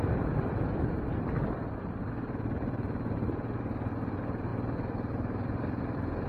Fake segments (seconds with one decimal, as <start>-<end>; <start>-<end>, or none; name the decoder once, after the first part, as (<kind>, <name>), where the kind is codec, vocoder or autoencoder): none